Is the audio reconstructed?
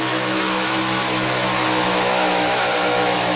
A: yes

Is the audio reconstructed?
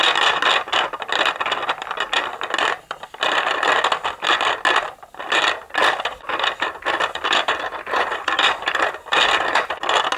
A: no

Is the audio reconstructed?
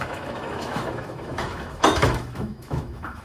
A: yes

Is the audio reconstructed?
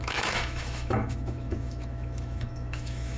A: yes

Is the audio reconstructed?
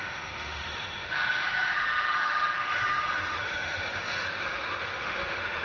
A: yes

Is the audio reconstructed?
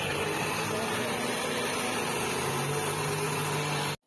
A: no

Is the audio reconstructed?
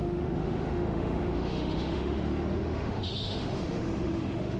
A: yes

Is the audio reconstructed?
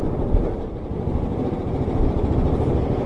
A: no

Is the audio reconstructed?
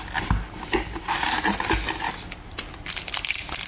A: no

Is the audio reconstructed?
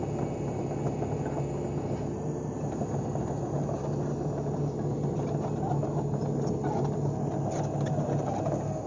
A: no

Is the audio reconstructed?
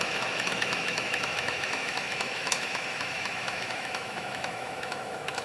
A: yes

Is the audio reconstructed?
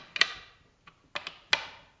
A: no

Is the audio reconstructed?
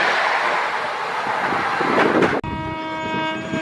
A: no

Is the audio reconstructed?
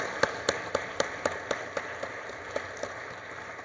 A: no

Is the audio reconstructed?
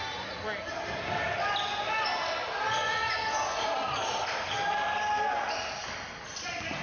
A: no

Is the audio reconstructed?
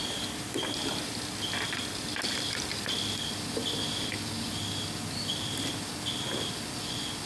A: no